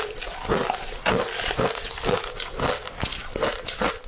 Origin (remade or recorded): recorded